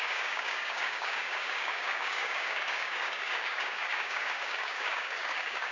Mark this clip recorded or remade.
remade